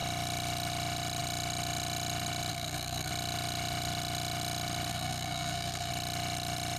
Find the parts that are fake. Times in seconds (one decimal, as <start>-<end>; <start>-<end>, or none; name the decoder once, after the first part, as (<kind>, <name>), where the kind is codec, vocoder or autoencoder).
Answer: 2.5-3.1 (codec, SNAC); 4.9-5.9